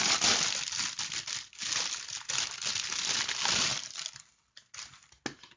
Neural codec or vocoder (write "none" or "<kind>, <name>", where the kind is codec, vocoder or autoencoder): none